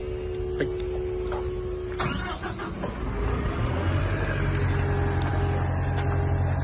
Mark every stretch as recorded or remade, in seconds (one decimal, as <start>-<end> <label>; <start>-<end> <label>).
0.0-6.6 recorded